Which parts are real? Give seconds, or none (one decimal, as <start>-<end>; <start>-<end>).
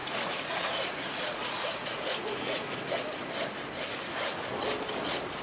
2.8-5.4